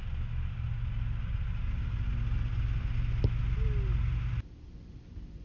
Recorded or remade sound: recorded